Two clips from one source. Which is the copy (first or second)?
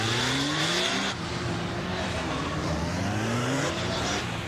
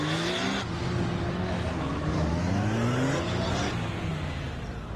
first